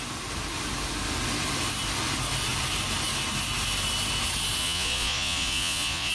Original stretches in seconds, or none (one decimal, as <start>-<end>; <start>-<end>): 0.0-4.6